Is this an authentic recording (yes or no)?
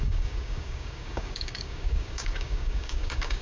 no